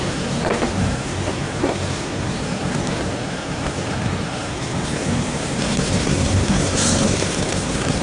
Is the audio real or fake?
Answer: fake